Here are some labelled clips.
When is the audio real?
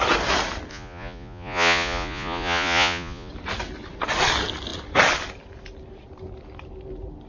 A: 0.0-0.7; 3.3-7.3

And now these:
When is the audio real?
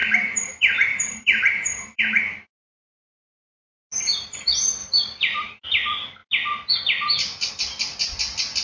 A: 2.0-4.8; 5.6-8.6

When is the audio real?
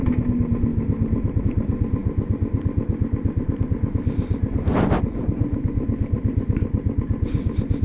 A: 0.0-7.8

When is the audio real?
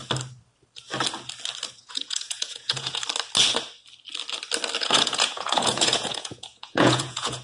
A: 0.0-1.8; 3.0-4.8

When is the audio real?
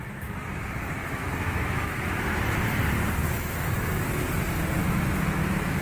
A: 0.0-1.0; 2.1-3.2; 4.0-4.8